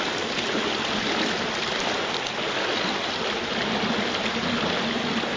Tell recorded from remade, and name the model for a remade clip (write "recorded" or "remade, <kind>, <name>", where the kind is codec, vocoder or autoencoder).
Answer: recorded